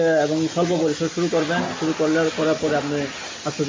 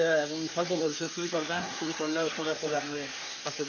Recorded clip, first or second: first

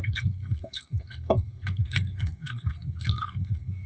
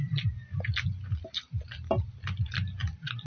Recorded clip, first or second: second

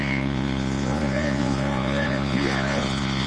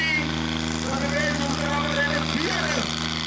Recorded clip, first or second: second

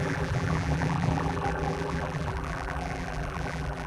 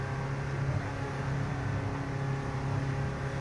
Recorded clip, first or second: second